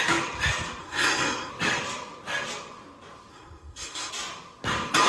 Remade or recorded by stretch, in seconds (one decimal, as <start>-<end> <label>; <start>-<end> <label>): 0.0-0.8 recorded; 0.8-1.5 remade; 1.5-3.3 recorded; 3.3-4.1 remade; 4.1-5.1 recorded